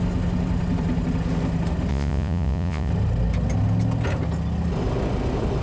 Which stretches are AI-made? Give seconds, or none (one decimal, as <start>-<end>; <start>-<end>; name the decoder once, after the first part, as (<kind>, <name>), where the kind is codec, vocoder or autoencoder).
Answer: 1.9-2.9 (vocoder, Vocos)